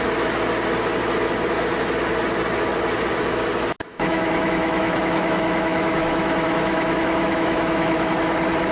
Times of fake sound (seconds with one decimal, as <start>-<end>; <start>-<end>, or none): 3.9-8.1